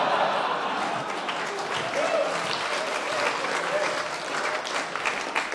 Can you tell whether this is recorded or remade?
recorded